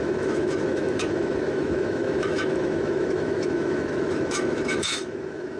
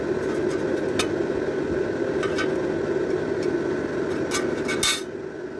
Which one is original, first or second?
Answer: second